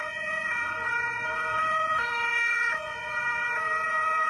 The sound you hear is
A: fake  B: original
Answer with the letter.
A